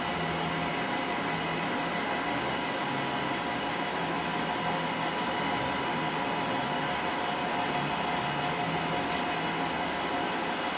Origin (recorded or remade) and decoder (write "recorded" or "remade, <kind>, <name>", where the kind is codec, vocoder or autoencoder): recorded